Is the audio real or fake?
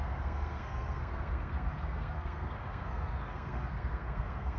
fake